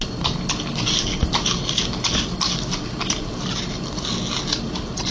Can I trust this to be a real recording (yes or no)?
yes